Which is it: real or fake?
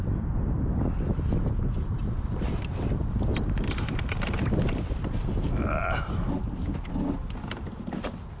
real